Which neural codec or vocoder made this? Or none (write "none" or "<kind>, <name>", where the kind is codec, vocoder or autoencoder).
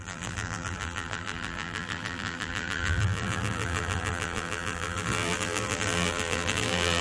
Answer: vocoder, BigVGAN v2